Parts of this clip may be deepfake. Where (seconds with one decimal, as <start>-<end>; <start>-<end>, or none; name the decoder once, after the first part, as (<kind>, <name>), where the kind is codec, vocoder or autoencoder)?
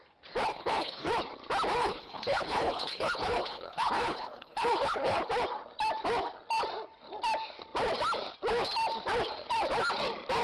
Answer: 0.5-1.1 (codec, HILCodec); 1.8-5.3